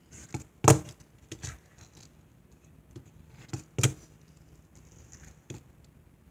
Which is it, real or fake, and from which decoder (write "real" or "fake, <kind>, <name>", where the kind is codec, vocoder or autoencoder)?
real